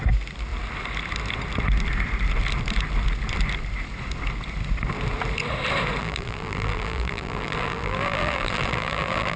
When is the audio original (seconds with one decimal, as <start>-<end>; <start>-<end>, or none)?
0.0-6.0